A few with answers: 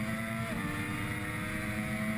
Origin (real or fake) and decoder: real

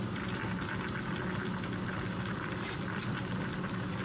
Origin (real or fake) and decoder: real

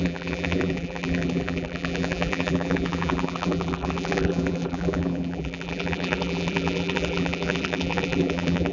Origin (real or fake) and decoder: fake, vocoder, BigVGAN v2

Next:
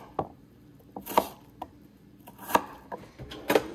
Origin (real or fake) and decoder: fake, vocoder, BigVGAN v2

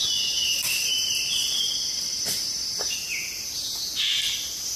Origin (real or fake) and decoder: real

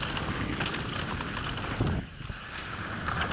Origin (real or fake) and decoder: real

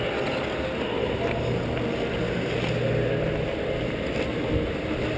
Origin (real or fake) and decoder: real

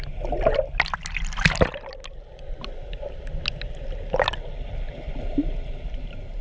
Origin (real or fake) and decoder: real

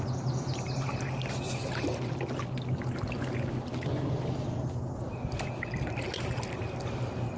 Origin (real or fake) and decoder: real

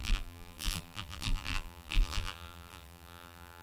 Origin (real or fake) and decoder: fake, vocoder, BigVGAN v2